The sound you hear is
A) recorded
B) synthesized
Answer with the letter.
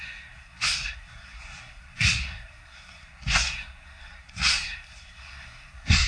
B